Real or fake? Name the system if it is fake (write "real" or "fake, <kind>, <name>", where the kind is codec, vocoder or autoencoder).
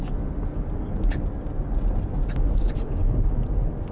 real